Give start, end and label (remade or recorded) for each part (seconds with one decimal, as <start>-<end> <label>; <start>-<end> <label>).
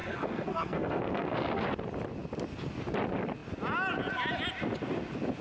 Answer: 0.0-1.6 remade; 1.6-5.4 recorded